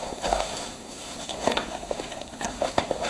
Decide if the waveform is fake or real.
fake